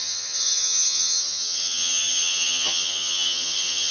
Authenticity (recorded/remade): remade